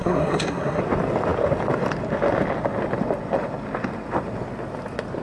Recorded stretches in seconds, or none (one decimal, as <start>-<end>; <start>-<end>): 0.8-5.2